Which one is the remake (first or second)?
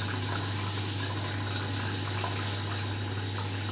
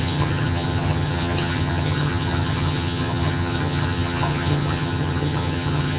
second